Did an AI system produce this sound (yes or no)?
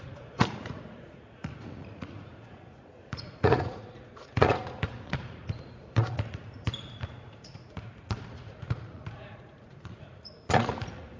yes